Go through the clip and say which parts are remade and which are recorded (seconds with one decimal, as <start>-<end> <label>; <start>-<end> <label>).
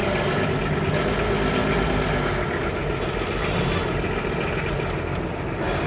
0.0-5.9 recorded